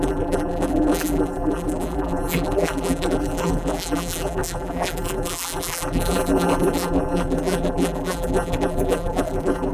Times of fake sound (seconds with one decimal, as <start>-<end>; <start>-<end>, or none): 0.0-9.7